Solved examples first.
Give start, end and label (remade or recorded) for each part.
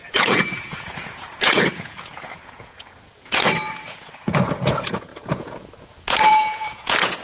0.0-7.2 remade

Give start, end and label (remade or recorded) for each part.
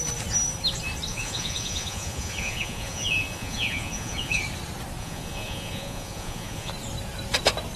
0.0-1.1 recorded; 1.1-4.4 remade; 4.4-5.0 recorded; 5.0-6.7 remade; 6.7-7.8 recorded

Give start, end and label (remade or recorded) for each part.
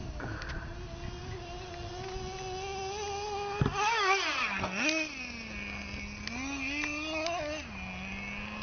0.0-8.6 recorded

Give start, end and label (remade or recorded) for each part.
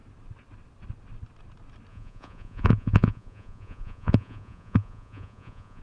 0.0-1.9 recorded; 1.9-5.8 remade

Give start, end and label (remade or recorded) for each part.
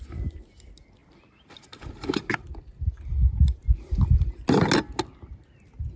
0.0-6.0 recorded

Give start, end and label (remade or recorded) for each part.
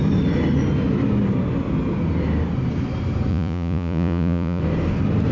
0.0-3.3 recorded; 3.3-4.6 remade; 4.6-5.3 recorded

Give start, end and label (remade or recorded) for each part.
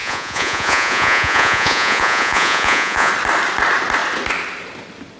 0.0-3.1 remade; 3.1-5.2 recorded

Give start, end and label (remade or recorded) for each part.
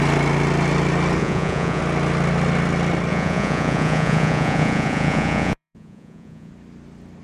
0.0-1.2 recorded; 1.2-1.8 remade; 1.8-3.1 recorded; 3.1-6.5 remade; 6.5-7.2 recorded